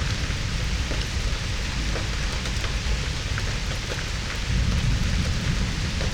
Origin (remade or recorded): recorded